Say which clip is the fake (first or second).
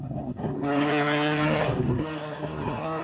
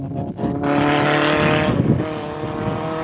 first